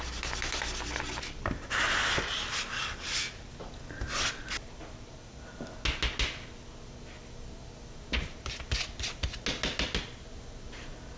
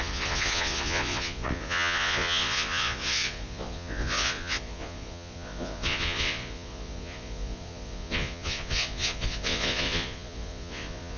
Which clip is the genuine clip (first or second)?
first